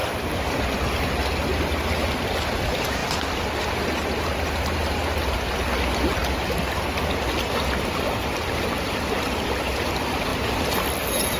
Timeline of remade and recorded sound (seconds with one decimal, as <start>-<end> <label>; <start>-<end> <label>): 0.0-0.6 remade; 0.6-10.3 recorded; 10.3-10.8 remade; 10.8-11.4 recorded